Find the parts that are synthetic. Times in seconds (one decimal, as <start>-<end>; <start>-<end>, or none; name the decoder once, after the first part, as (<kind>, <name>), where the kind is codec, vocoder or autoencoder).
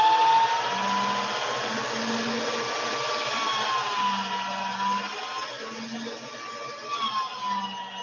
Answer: none